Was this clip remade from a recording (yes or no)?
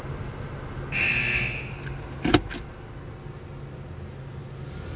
no